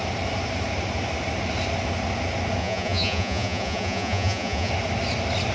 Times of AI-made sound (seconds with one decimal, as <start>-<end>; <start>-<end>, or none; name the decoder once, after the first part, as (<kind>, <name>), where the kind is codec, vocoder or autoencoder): 2.6-4.7 (vocoder, Vocos)